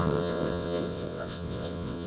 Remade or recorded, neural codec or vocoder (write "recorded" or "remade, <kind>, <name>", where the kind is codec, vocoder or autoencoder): remade, vocoder, WaveNeXt